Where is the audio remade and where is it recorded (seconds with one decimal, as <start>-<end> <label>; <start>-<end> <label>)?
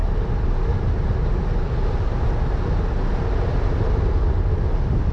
0.0-5.1 recorded